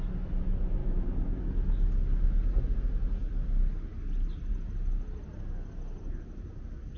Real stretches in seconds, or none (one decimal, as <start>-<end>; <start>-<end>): 0.0-0.8; 1.4-7.0

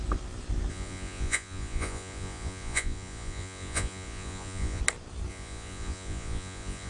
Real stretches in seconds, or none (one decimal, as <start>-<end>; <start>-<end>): 0.0-0.7; 4.8-5.3

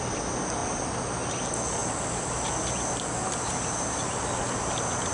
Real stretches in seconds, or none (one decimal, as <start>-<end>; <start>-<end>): 0.0-5.1

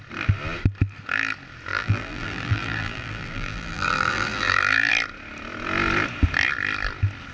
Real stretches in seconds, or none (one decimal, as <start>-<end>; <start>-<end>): 0.0-1.7; 4.9-7.3

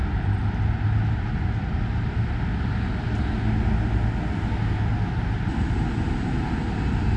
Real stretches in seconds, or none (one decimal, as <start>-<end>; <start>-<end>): 0.0-7.2

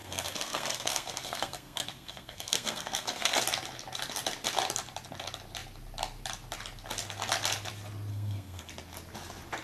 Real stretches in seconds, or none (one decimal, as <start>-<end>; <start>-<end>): 3.4-8.1; 8.7-9.6

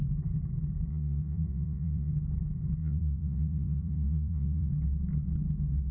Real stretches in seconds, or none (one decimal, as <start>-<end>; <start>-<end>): 0.0-0.9; 2.1-2.8; 4.7-5.9

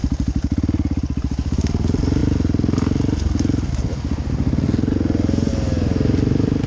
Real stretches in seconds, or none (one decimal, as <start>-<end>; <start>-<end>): 0.0-6.7